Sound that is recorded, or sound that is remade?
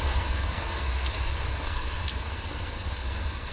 remade